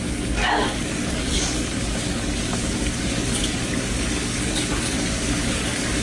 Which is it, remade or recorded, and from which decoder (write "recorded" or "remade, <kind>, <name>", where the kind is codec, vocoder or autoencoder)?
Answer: remade, codec, DAC